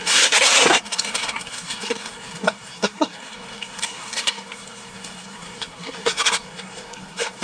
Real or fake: fake